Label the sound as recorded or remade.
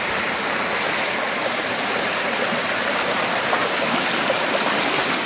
recorded